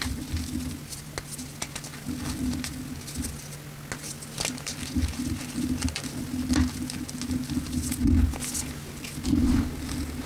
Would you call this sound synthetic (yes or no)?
no